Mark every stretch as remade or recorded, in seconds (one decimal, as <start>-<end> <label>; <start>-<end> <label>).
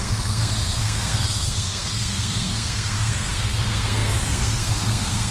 0.0-5.3 remade